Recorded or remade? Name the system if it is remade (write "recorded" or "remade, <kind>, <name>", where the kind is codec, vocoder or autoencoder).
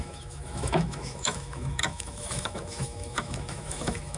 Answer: remade, autoencoder, DAC-VAE